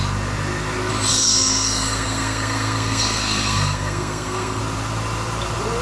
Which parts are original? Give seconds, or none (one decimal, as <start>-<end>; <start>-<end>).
0.0-1.1; 4.6-5.8

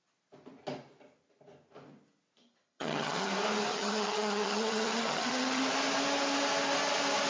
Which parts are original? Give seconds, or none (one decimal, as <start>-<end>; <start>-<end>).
0.0-2.4; 3.3-3.7; 5.6-7.3

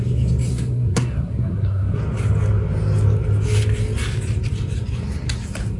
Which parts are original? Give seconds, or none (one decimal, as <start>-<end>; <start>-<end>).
0.0-0.5; 2.0-5.8

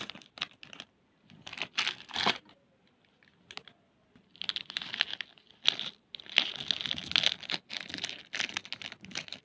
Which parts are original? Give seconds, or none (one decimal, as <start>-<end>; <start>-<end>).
0.0-9.4

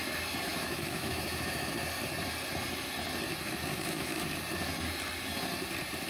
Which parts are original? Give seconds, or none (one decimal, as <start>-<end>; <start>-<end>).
0.0-0.5; 1.7-3.7; 4.2-6.1